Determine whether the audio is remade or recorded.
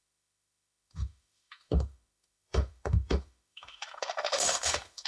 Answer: remade